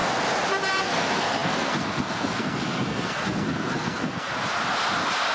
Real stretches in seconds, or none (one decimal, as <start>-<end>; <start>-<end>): 0.0-0.8; 4.3-5.3